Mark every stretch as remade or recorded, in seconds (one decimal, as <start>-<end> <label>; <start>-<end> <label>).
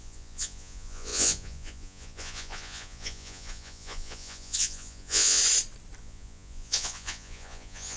0.0-5.4 remade; 5.4-6.0 recorded; 6.0-8.0 remade